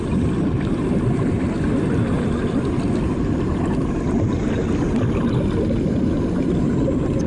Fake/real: real